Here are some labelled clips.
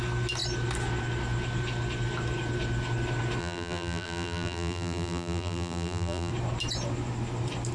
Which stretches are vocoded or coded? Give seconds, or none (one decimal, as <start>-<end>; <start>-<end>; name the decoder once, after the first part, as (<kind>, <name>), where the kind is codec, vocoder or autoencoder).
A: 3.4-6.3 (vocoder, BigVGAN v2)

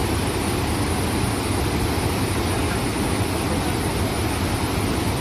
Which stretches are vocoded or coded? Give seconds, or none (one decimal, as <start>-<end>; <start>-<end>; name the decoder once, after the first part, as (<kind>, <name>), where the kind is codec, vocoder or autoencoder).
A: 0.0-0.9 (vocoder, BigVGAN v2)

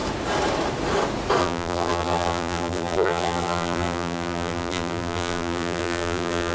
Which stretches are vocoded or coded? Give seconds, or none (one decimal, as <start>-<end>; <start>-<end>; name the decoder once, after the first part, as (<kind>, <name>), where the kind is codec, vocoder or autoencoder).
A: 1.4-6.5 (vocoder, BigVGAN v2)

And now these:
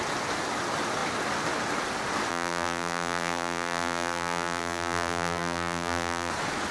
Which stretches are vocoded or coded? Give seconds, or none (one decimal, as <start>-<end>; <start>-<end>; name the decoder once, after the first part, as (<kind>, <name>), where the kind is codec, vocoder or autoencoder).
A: 2.3-6.3 (vocoder, BigVGAN v2)

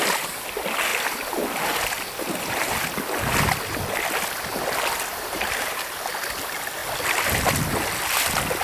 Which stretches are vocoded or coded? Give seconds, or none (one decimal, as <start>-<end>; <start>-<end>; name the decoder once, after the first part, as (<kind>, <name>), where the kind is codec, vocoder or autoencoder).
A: 5.1-5.9 (vocoder, BigVGAN v2)